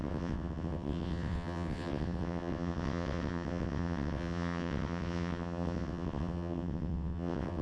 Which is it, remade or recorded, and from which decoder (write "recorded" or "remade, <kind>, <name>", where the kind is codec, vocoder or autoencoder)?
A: remade, vocoder, WaveNeXt